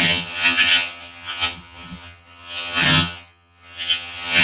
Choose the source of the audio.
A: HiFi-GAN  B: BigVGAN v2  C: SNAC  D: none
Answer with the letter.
A